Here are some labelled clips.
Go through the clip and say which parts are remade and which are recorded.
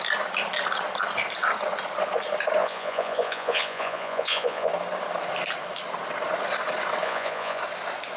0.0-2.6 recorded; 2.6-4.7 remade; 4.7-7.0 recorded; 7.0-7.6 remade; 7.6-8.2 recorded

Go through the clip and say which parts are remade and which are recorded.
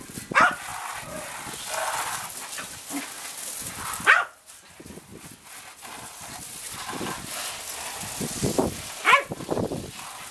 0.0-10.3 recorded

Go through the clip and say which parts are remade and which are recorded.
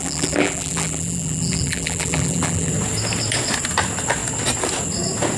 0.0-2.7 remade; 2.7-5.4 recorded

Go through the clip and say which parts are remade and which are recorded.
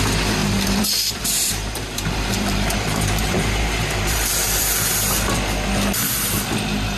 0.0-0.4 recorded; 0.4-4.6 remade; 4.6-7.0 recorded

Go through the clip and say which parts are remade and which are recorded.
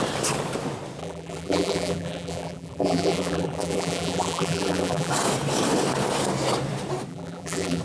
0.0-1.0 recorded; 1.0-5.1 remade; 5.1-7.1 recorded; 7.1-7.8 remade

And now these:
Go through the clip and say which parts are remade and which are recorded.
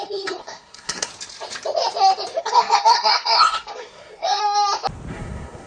0.0-1.1 remade; 1.1-2.4 recorded; 2.4-4.4 remade; 4.4-5.1 recorded; 5.1-5.7 remade